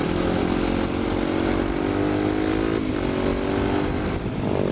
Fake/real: real